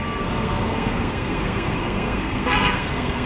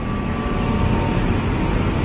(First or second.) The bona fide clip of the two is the second